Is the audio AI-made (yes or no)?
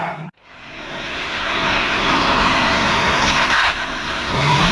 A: yes